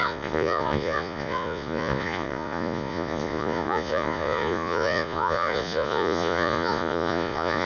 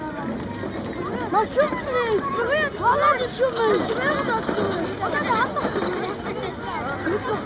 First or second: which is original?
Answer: second